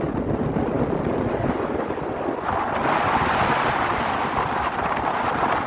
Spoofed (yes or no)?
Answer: no